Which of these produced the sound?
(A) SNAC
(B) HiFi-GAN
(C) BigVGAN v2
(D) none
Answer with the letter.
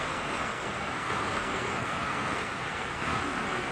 A